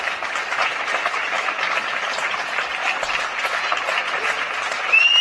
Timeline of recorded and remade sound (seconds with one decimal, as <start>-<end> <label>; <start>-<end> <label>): 0.0-0.6 recorded; 0.6-1.6 remade; 1.6-5.2 recorded